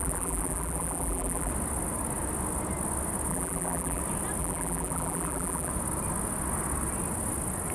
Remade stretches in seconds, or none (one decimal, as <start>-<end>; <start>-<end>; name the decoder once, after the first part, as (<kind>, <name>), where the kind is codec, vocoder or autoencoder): 0.0-1.5 (vocoder, BigVGAN v2); 3.3-4.0; 4.4-5.7